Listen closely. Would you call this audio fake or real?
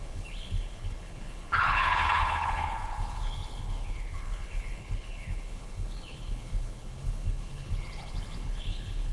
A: fake